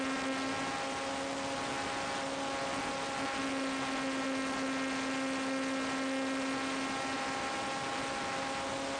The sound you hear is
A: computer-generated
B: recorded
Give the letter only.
B